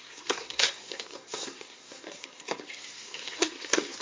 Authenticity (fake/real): fake